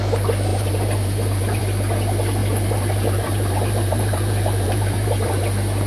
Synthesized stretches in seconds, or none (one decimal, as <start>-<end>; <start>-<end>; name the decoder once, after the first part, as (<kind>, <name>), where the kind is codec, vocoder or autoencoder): 0.5-1.6 (vocoder, BigVGAN v2); 2.4-5.4